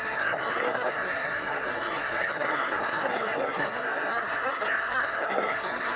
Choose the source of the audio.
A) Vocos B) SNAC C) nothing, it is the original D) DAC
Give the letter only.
B